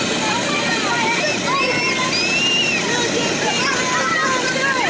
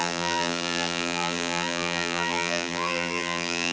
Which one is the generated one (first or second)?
second